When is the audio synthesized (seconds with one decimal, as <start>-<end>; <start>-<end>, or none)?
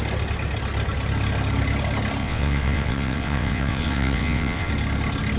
2.2-4.7